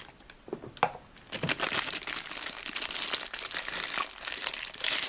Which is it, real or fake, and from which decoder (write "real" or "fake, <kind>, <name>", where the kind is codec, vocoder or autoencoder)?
real